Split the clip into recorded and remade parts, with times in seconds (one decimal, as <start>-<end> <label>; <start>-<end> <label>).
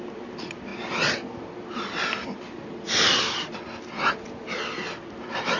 0.0-5.6 recorded